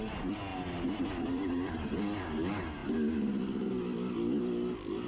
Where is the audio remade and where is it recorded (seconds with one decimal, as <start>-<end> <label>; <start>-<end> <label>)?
0.0-0.5 recorded; 0.5-2.0 remade; 2.0-5.1 recorded